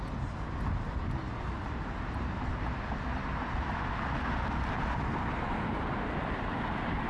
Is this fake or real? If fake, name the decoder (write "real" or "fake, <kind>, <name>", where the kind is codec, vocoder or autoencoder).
real